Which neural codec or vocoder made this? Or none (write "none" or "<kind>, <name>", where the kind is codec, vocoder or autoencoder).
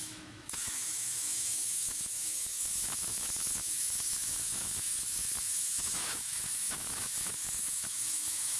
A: autoencoder, DAC-VAE